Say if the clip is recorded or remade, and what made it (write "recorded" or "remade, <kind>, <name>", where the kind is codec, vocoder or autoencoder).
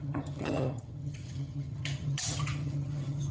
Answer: remade, vocoder, HiFi-GAN